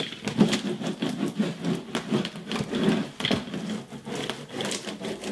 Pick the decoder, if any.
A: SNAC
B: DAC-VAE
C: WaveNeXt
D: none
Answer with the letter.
D